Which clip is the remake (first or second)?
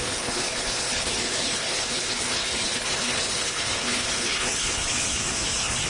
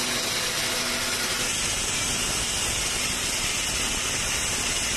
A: first